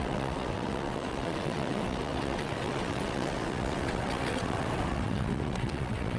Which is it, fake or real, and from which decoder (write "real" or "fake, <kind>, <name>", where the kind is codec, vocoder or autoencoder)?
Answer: fake, vocoder, WaveNeXt